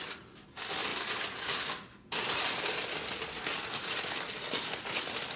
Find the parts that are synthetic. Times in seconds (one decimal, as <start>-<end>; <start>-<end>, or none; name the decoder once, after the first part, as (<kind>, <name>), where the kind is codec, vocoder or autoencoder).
none